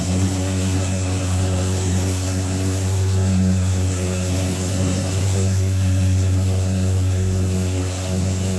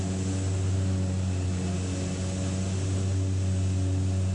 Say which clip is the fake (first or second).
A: first